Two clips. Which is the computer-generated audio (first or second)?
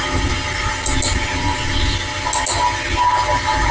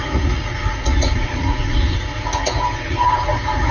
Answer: second